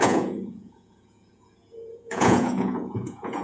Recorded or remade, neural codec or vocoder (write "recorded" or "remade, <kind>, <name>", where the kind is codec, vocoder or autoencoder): remade, vocoder, Vocos